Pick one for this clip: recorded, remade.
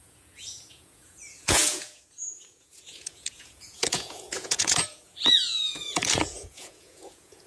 remade